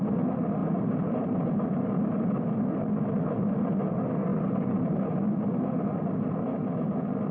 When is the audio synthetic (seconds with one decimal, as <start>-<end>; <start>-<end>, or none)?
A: 0.6-2.2